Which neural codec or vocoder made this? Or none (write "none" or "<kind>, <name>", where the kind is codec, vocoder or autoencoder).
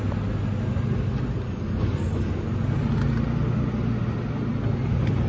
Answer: none